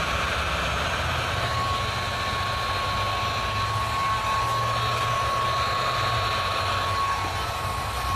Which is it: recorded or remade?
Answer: recorded